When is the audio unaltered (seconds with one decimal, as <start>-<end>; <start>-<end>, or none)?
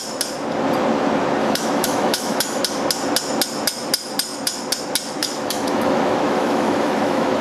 0.0-1.4; 2.6-5.2